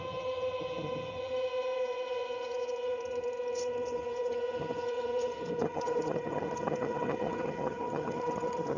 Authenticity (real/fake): fake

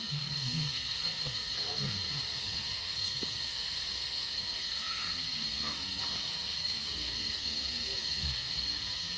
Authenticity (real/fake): fake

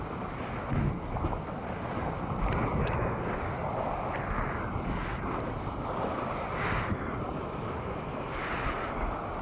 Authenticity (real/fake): real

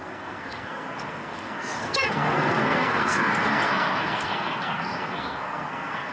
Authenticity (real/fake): fake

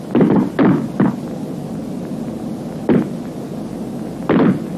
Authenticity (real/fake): real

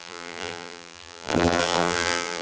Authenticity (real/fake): fake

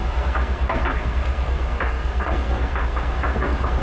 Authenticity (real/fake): fake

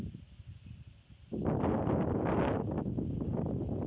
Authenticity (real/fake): real